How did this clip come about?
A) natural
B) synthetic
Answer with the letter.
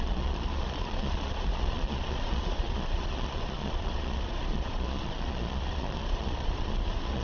B